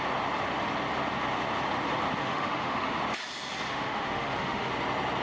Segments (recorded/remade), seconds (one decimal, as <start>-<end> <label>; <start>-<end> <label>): 0.0-2.2 recorded; 2.2-3.0 remade; 3.0-3.7 recorded; 3.7-4.7 remade; 4.7-5.2 recorded